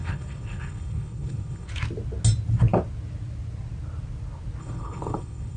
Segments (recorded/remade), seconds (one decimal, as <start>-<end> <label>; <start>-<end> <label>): 0.0-1.7 remade; 1.7-4.6 recorded; 4.6-5.6 remade